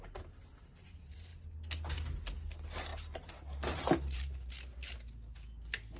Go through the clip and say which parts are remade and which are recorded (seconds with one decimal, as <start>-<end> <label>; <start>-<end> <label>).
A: 0.0-2.9 recorded; 2.9-4.5 remade; 4.5-6.0 recorded